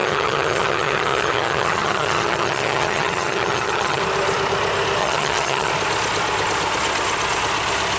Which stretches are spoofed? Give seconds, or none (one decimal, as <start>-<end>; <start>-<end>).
0.0-4.0; 5.0-5.7